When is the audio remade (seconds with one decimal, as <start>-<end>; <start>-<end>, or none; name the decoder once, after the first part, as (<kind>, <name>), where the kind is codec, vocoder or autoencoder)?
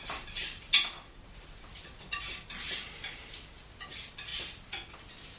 none